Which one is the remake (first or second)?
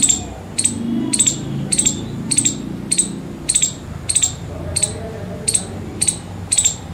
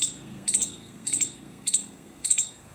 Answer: second